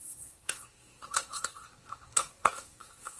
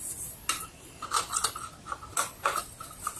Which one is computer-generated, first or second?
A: first